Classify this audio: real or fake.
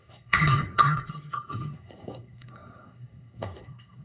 fake